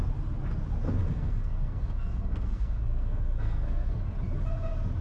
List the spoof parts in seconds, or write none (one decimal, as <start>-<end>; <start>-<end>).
1.0-4.0

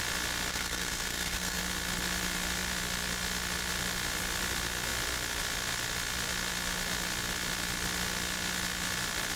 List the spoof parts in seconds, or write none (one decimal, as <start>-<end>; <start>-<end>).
0.5-1.6

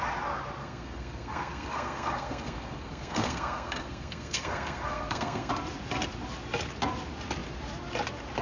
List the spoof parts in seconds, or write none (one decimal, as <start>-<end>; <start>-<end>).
0.6-5.5

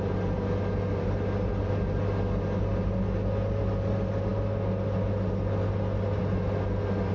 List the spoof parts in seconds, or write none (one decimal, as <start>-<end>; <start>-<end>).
none

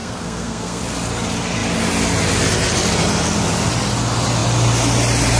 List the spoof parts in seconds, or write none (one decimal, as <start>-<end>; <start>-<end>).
0.0-0.8

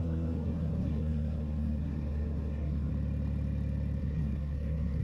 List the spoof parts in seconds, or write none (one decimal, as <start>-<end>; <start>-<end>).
0.0-2.9; 4.0-5.0